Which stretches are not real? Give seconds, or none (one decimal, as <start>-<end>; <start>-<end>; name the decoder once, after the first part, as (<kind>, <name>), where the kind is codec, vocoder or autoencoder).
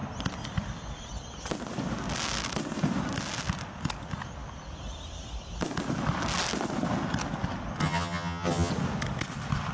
7.8-8.7 (vocoder, HiFi-GAN)